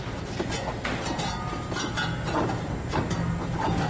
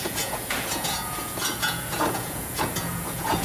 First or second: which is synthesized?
second